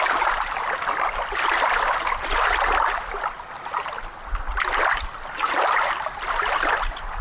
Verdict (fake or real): real